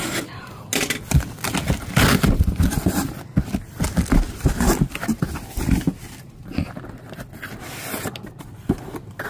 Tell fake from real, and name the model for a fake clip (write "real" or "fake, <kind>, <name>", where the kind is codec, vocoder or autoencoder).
real